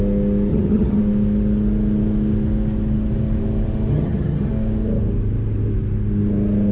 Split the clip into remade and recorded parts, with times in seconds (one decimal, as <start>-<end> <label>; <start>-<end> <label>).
0.0-0.5 recorded; 0.5-1.0 remade; 1.0-3.9 recorded; 3.9-4.5 remade; 4.5-6.7 recorded